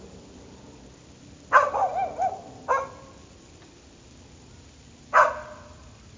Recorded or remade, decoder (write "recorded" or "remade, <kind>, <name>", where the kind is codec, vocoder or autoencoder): recorded